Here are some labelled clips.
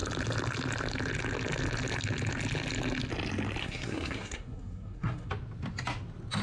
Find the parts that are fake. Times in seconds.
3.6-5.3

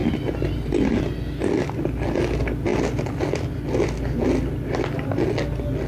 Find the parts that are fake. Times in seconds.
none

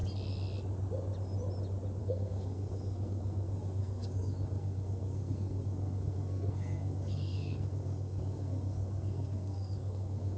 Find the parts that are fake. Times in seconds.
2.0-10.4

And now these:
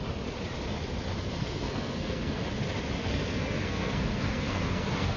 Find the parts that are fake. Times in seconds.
1.4-2.4; 3.0-5.2

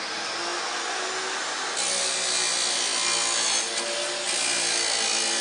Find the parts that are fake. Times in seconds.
none

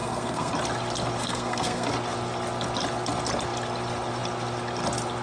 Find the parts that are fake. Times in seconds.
0.0-0.5; 1.2-1.9